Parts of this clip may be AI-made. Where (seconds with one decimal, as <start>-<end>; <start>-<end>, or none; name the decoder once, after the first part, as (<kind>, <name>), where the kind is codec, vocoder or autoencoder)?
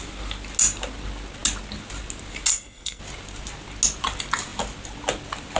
2.5-3.0 (codec, SNAC)